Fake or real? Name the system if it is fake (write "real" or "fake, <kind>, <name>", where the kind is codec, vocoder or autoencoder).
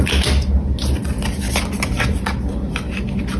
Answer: real